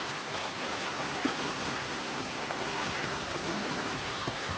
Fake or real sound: fake